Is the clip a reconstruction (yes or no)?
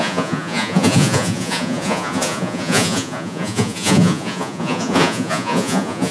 yes